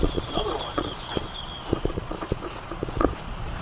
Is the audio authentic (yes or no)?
no